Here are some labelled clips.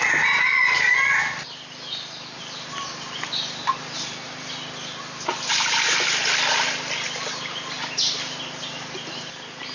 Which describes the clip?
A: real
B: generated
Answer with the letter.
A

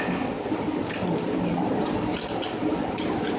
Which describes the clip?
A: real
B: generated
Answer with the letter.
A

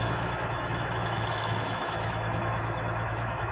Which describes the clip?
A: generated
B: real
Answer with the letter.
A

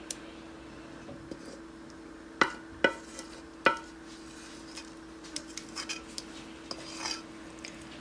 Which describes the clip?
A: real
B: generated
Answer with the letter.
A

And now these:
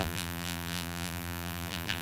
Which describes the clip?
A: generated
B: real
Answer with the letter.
A